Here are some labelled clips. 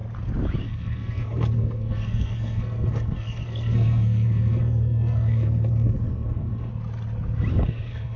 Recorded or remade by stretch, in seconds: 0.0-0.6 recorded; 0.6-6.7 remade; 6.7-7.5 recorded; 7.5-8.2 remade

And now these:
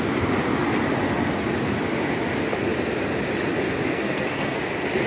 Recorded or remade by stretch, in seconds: 0.0-3.9 recorded; 3.9-4.6 remade; 4.6-5.1 recorded

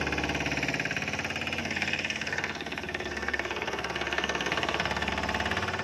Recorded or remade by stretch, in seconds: 0.0-1.6 recorded; 1.6-5.1 remade; 5.1-5.8 recorded